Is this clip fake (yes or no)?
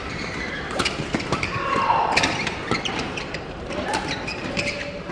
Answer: yes